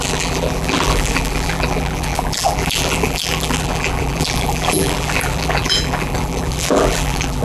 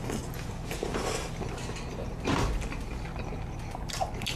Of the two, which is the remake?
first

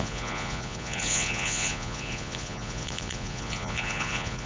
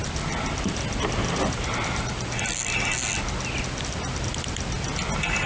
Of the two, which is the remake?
first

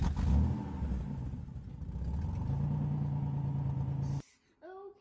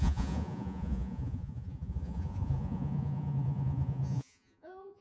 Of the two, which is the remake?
second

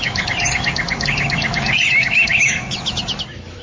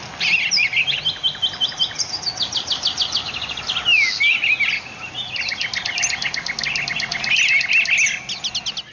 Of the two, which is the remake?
first